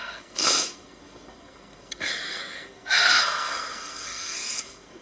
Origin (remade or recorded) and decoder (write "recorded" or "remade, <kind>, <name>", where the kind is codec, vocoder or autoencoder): remade, codec, SNAC